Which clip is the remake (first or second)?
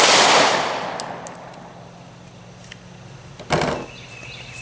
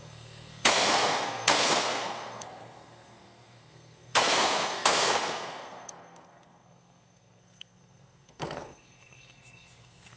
second